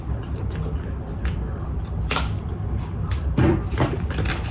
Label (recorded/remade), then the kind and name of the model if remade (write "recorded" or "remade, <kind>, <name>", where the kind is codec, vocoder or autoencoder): remade, vocoder, BigVGAN v2